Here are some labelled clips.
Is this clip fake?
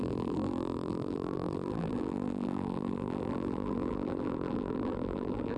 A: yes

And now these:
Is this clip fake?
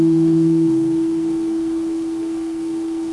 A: yes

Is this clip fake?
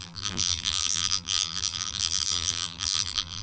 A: yes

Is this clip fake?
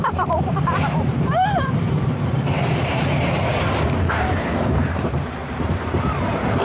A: yes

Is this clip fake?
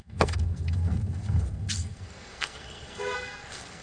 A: yes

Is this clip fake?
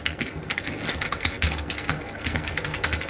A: yes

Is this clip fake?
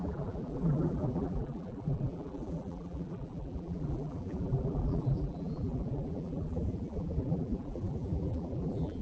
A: yes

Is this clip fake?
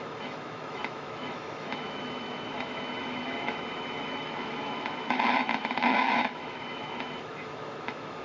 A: yes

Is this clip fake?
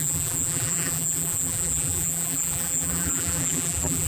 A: yes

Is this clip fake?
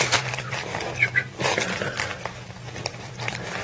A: yes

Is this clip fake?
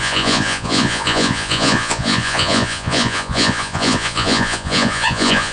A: yes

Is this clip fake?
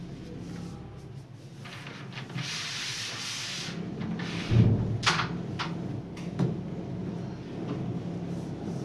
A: no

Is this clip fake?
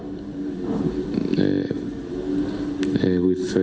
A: no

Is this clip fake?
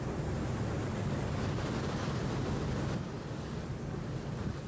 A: yes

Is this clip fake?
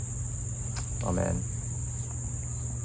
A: no